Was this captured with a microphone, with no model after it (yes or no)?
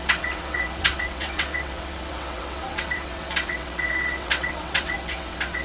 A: no